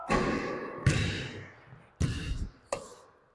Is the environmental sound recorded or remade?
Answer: recorded